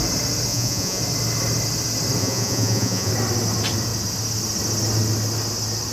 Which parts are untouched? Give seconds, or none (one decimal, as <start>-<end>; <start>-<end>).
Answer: 0.0-0.5; 1.0-2.2; 3.1-5.9